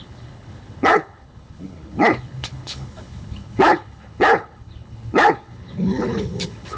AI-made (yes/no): yes